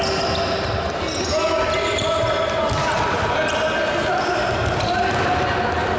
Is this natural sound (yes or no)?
yes